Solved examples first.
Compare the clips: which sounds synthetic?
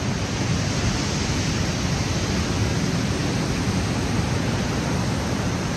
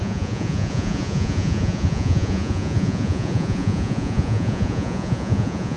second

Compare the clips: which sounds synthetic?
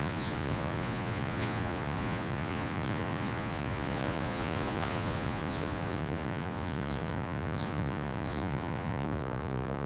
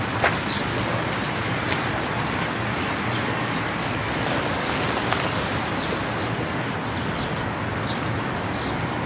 first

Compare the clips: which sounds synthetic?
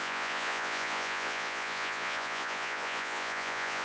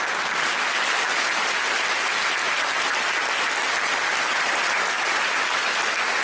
first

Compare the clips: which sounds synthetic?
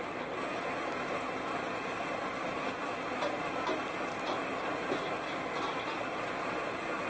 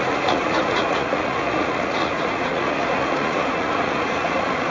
second